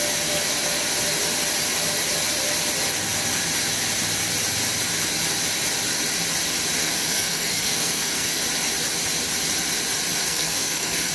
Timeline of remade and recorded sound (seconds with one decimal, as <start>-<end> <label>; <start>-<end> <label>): 0.0-6.8 recorded; 6.8-8.4 remade; 8.4-10.2 recorded; 10.2-11.1 remade